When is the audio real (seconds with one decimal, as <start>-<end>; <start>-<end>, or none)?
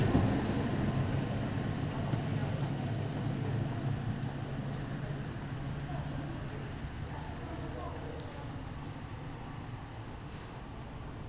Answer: 0.0-10.0; 10.6-11.3